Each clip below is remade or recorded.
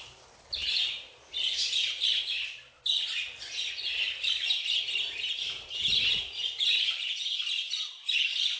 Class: recorded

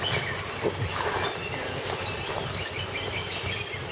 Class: recorded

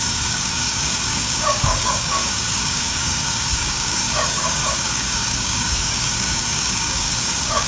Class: remade